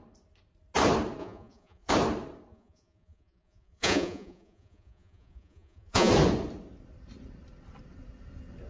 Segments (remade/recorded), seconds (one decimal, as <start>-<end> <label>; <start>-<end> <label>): 0.0-1.2 recorded; 1.2-1.9 remade; 1.9-2.5 recorded; 2.5-6.1 remade; 6.1-8.7 recorded